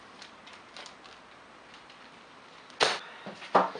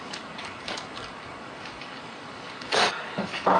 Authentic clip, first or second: first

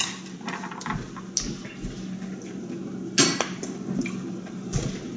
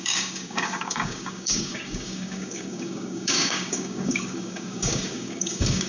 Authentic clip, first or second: first